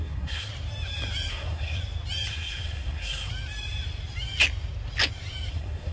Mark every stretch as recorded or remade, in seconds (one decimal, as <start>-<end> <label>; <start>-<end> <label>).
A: 0.0-0.5 remade; 0.5-1.3 recorded; 1.3-1.8 remade; 1.8-2.3 recorded; 2.3-3.3 remade; 3.3-5.5 recorded; 5.5-5.9 remade